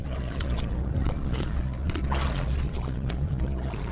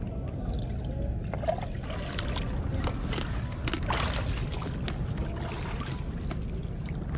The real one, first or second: second